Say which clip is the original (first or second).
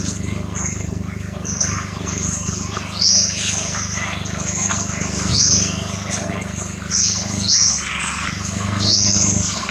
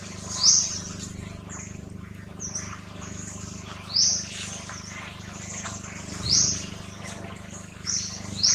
second